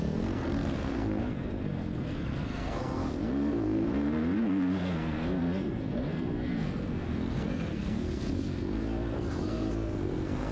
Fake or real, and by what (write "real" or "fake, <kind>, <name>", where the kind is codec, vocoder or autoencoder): fake, codec, SNAC